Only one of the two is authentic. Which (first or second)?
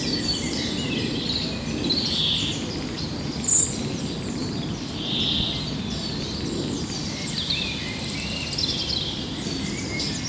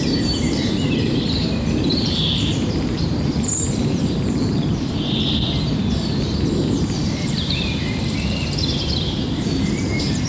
first